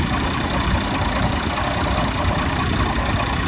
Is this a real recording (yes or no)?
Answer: yes